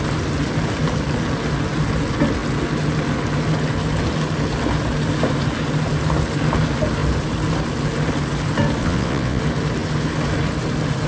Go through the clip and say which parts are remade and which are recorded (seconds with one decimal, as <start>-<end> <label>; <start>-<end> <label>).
0.0-8.8 recorded; 8.8-9.4 remade; 9.4-11.1 recorded